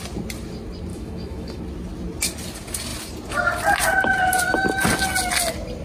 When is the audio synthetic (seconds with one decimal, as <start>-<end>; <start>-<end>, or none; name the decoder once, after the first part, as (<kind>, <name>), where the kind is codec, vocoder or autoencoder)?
0.9-1.6 (autoencoder, DAC-VAE)